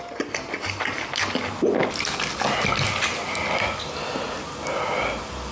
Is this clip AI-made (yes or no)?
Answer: no